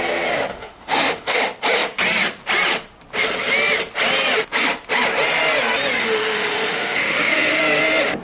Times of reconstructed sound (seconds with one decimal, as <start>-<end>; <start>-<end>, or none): 0.5-1.4; 6.0-7.6

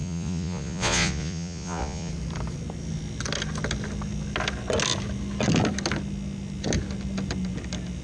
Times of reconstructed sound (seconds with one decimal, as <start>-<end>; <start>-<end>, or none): 0.0-2.1

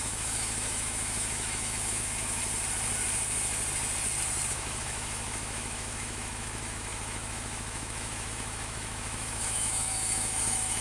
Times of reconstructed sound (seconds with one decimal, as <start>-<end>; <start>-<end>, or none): 0.0-2.4; 4.5-10.8

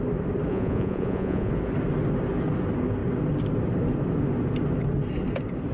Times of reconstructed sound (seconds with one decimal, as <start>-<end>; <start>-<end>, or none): 0.5-1.5

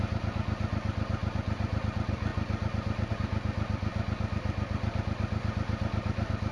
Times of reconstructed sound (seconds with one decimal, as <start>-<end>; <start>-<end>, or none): 1.2-1.8

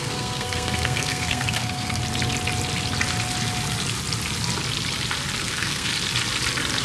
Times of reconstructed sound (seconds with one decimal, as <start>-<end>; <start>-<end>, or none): 0.0-2.0; 5.4-5.9